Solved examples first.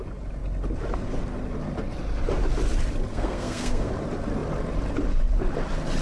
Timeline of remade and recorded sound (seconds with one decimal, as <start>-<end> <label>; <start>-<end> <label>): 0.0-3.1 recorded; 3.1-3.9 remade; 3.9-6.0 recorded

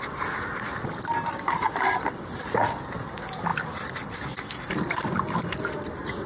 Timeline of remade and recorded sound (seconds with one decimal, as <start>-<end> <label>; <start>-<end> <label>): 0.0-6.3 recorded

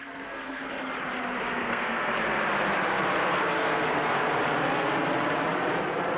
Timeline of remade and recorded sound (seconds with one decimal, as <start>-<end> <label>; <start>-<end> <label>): 0.0-0.6 remade; 0.6-1.6 recorded; 1.6-2.1 remade; 2.1-3.2 recorded; 3.2-4.2 remade; 4.2-6.2 recorded